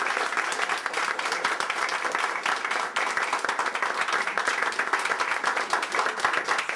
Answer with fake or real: real